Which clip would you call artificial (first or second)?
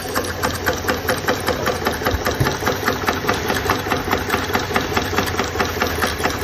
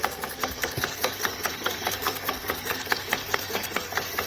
second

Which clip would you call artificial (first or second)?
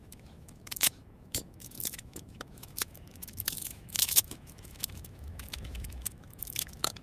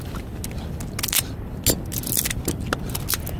first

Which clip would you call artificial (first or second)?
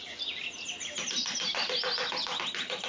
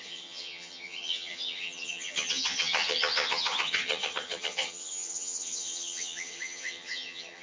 second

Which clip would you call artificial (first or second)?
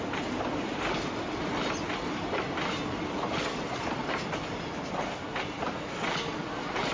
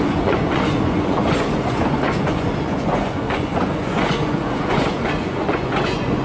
second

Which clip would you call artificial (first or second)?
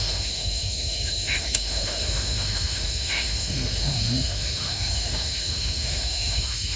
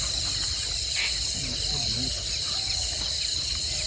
first